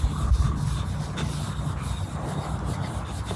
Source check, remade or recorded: recorded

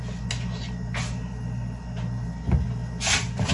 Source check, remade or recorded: recorded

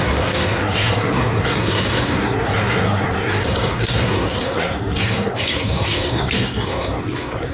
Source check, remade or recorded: remade